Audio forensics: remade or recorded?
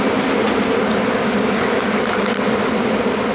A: recorded